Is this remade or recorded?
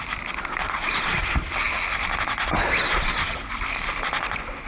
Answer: recorded